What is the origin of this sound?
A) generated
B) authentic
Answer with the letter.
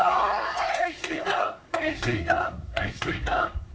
A